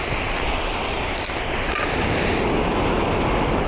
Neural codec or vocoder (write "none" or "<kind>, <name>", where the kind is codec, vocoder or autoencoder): none